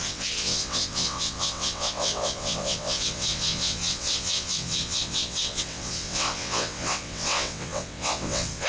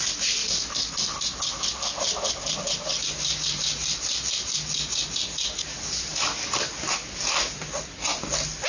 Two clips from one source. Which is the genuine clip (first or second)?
second